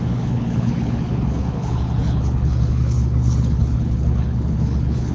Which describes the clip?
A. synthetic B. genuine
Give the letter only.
A